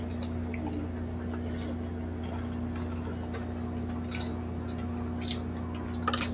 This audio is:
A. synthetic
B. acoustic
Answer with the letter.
B